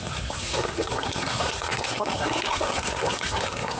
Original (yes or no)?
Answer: no